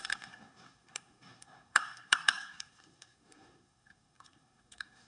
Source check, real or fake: fake